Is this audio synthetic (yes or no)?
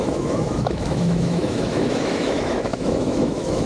yes